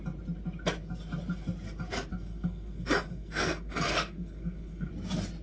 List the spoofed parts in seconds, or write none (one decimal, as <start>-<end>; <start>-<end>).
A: 2.1-4.9